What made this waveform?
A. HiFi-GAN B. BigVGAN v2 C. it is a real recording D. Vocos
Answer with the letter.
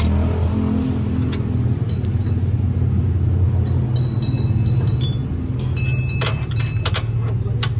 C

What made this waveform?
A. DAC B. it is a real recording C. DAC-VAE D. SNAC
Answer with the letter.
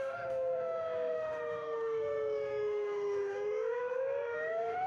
C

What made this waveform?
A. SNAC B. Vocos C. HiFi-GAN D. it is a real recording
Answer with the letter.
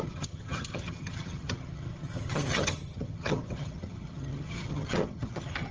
C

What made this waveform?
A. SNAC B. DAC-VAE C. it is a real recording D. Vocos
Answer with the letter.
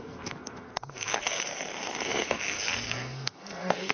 A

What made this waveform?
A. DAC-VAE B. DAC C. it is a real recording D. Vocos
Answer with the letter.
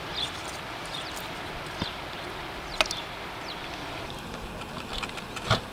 C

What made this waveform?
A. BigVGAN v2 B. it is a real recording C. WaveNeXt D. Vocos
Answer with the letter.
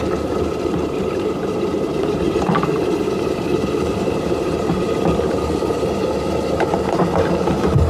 A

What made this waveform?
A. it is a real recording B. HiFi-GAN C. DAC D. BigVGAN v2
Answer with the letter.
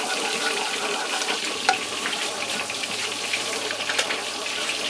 A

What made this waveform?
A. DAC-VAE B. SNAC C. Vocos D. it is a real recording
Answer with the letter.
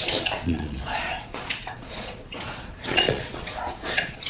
C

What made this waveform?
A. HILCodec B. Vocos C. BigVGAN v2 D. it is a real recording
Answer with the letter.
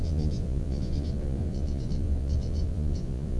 B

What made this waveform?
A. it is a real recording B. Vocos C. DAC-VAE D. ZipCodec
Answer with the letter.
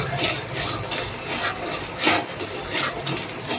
A